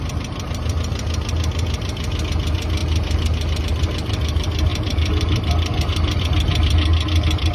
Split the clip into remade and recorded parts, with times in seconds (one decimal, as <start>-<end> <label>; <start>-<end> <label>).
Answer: 0.0-4.7 recorded; 4.7-6.2 remade; 6.2-7.5 recorded